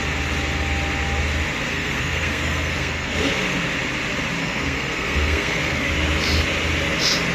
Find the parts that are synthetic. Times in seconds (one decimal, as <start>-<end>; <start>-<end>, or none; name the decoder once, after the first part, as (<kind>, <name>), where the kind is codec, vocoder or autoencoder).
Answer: 1.7-3.3 (codec, SNAC); 4.4-5.9